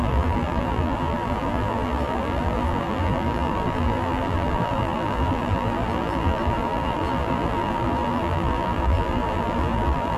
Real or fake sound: fake